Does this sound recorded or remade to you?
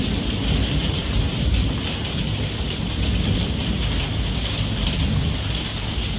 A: recorded